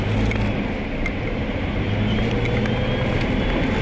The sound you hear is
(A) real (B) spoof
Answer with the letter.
A